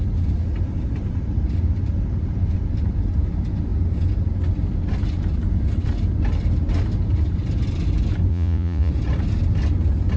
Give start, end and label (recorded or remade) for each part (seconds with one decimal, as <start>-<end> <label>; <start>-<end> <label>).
0.0-8.3 recorded; 8.3-8.9 remade; 8.9-10.2 recorded